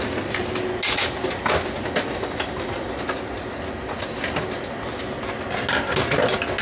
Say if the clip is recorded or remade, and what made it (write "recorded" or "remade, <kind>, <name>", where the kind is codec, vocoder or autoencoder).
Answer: recorded